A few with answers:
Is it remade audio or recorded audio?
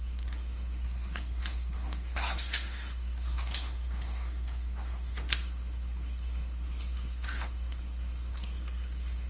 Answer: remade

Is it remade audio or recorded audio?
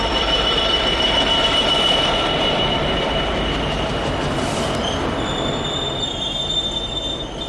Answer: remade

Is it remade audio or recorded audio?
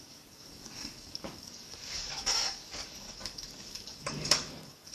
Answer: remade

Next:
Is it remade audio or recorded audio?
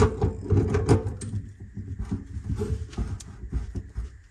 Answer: recorded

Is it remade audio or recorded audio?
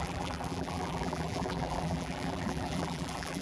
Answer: remade